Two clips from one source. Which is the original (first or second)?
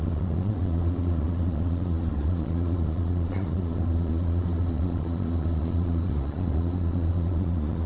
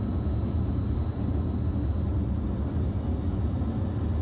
second